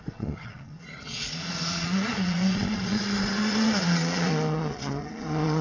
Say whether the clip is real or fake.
fake